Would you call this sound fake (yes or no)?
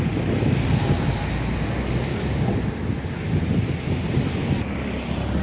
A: no